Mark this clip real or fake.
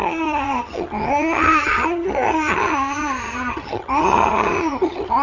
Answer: fake